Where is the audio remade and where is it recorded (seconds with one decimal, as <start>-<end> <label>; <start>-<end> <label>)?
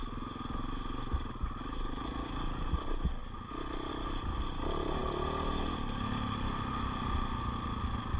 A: 0.0-8.2 recorded